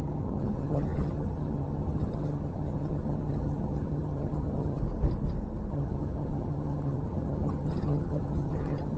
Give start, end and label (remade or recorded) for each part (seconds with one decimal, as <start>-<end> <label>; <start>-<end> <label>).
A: 0.0-4.8 remade; 4.8-5.7 recorded; 5.7-9.0 remade

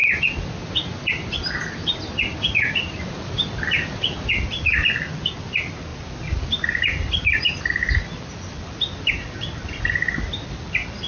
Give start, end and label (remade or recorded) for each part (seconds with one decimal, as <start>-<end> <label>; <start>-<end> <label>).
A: 0.0-11.1 recorded

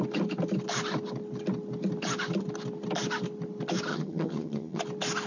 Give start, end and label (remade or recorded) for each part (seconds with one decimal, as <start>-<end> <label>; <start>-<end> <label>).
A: 0.0-3.9 recorded; 3.9-4.8 remade; 4.8-5.3 recorded

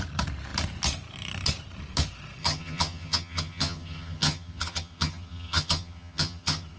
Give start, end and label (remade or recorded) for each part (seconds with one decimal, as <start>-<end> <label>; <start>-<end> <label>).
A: 0.0-2.4 recorded; 2.4-6.8 remade

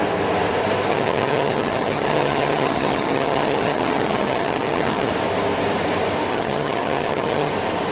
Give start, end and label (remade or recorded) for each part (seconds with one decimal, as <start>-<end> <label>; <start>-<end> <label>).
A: 0.0-0.9 recorded; 0.9-5.1 remade; 5.1-6.3 recorded; 6.3-7.5 remade; 7.5-7.9 recorded

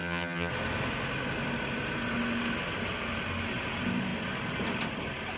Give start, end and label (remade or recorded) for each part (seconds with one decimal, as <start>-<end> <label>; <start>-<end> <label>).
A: 0.0-0.5 remade; 0.5-5.4 recorded